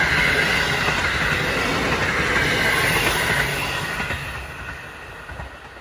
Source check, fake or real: real